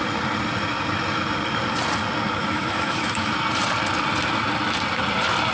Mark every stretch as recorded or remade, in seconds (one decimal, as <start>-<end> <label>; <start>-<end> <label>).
0.0-2.4 recorded; 2.4-3.3 remade; 3.3-5.5 recorded